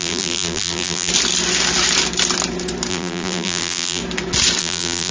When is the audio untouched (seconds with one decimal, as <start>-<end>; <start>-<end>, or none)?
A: 1.1-2.9; 4.0-4.6